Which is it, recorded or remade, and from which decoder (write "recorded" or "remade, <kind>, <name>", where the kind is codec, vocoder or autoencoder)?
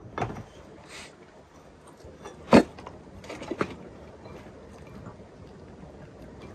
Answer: recorded